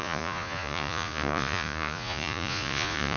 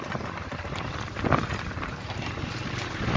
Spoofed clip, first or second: first